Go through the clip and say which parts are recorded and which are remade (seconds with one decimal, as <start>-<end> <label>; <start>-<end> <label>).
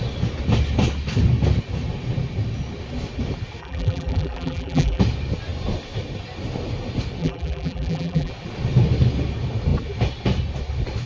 0.0-3.6 recorded; 3.6-5.0 remade; 5.0-7.2 recorded; 7.2-8.3 remade; 8.3-11.1 recorded